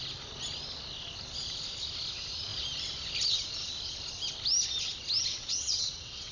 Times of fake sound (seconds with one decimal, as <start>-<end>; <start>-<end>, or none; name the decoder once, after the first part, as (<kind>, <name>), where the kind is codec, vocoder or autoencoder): 5.3-6.3 (vocoder, WaveNeXt)